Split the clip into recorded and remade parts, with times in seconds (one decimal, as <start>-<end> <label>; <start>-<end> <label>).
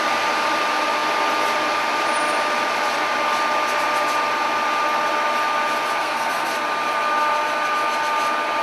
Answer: 0.0-6.0 recorded; 6.0-6.5 remade; 6.5-8.6 recorded